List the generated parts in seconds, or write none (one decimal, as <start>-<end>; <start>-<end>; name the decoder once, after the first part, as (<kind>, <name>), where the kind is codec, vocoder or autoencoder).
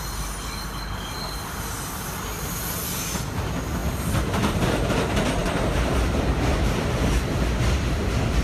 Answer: none